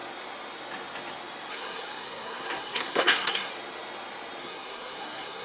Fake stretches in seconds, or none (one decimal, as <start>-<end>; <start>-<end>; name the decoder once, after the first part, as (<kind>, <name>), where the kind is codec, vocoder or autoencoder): 1.5-3.5 (codec, SNAC); 4.4-5.4